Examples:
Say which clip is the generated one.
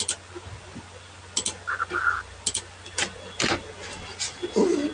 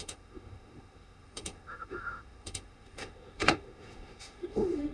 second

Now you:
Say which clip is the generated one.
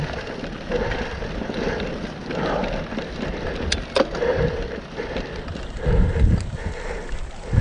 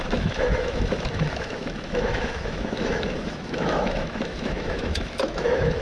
second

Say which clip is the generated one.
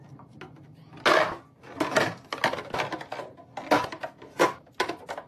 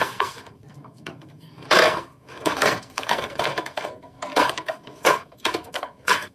second